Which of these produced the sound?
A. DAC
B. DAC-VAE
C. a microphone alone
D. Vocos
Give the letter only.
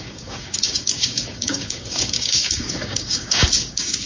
A